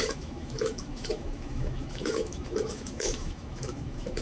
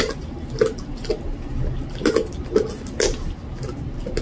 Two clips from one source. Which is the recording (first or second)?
second